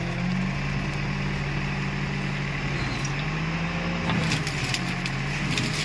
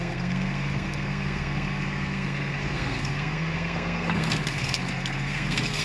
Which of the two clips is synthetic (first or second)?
second